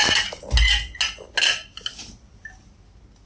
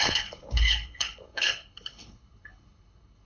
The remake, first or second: second